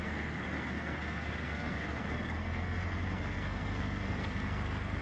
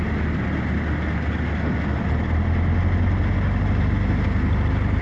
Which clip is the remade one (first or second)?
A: first